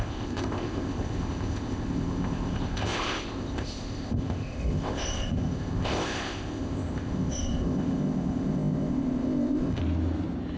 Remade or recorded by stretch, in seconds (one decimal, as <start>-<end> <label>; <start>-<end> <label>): 0.0-9.8 remade; 9.8-10.6 recorded